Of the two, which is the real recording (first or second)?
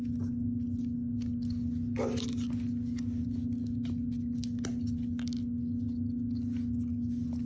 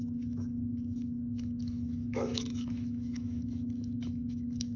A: first